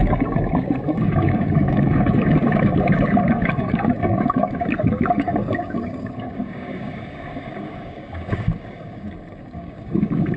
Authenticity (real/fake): fake